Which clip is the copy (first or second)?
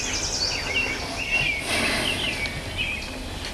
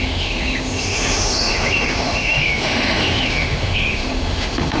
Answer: second